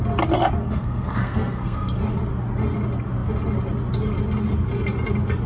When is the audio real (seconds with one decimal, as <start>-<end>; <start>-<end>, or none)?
0.0-0.6; 2.0-5.5